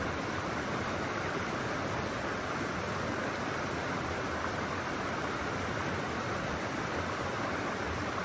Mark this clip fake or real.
real